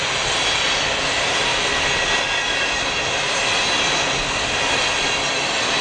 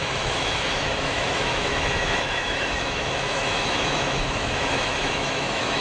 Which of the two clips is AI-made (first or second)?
second